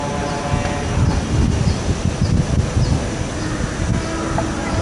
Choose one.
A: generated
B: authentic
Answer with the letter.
B